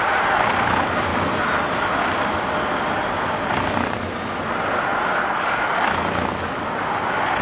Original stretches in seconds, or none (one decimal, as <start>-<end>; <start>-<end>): 0.0-7.4